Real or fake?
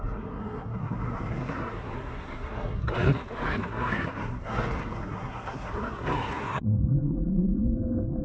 fake